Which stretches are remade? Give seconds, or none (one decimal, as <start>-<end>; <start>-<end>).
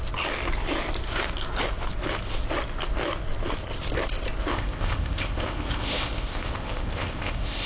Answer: 4.5-7.7